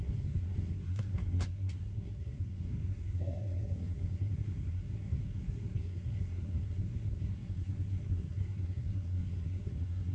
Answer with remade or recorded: remade